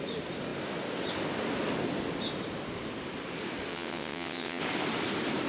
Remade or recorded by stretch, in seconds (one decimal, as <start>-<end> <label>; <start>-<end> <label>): 0.0-3.7 recorded; 3.7-4.6 remade; 4.6-5.5 recorded